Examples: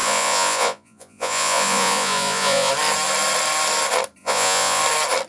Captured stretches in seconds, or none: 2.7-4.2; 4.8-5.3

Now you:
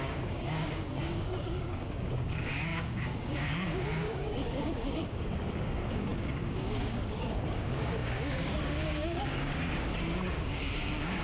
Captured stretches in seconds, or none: none

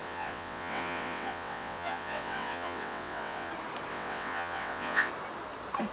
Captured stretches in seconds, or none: 3.5-3.9; 5.1-5.9

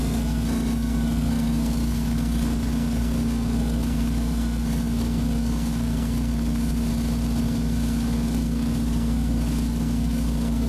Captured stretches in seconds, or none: 6.9-7.4

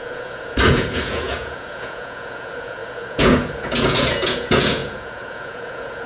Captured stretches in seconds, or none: none

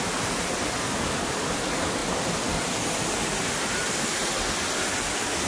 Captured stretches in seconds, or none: 0.0-5.5